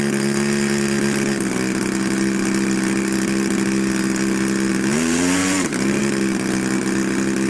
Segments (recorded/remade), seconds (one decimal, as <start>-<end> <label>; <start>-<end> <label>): 0.0-4.7 recorded; 4.7-6.0 remade; 6.0-7.5 recorded